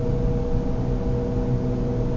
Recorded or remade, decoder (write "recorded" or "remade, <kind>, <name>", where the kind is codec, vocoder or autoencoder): recorded